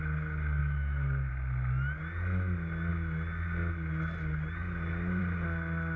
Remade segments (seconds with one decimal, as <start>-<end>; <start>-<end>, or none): 0.6-1.3